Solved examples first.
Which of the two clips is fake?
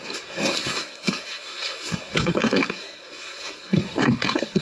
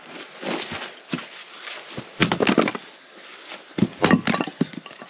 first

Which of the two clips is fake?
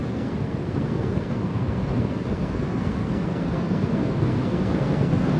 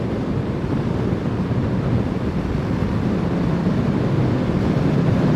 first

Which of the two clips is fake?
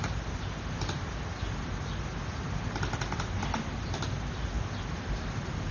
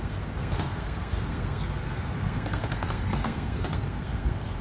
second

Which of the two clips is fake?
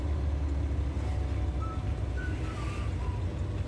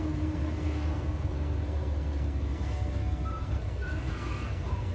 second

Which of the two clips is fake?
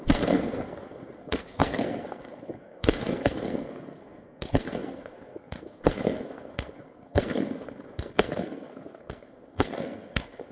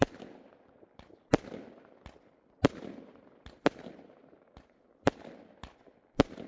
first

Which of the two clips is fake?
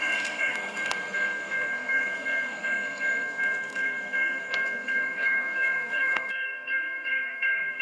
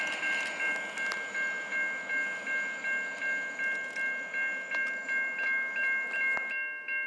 first